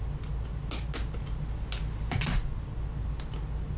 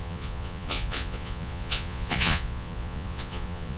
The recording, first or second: first